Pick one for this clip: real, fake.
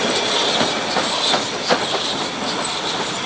real